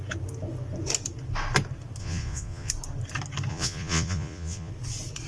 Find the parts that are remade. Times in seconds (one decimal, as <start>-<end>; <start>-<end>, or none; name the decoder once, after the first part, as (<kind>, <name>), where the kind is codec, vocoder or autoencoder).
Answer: 2.0-2.7 (vocoder, Vocos); 3.5-4.7